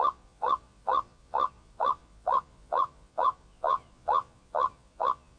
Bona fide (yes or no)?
no